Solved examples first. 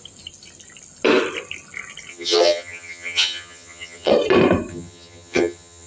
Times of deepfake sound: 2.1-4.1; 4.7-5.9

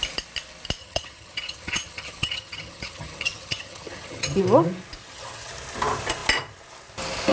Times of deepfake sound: 0.8-4.4; 5.0-5.5